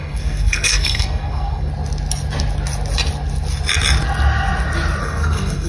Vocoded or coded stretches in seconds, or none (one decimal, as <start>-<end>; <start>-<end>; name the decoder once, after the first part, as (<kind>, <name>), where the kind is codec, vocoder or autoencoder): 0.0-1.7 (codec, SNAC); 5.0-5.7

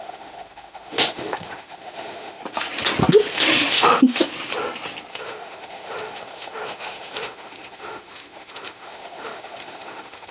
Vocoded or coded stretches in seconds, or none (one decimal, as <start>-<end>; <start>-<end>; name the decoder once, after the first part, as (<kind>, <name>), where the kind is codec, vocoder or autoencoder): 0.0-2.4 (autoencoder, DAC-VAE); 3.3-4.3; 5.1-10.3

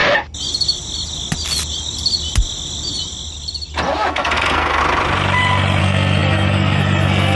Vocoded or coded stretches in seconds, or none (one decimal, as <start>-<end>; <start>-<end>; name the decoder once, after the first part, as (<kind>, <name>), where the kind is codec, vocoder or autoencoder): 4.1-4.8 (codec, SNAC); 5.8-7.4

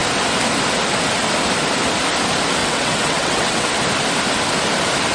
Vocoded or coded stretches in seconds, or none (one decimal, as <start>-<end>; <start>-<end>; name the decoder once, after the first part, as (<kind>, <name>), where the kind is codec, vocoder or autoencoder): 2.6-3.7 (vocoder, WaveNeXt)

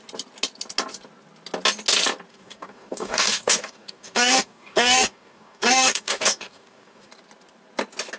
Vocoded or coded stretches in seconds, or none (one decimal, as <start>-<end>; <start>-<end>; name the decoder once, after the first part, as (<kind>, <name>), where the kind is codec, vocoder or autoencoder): 2.3-7.1 (codec, DAC)